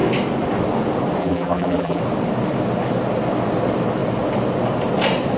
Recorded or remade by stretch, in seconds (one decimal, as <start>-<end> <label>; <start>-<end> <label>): 0.0-1.2 recorded; 1.2-2.0 remade; 2.0-5.4 recorded